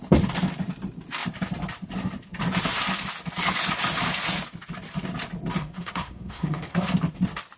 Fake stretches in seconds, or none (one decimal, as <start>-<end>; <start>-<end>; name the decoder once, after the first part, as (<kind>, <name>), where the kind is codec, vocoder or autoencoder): 5.6-6.9 (codec, SNAC)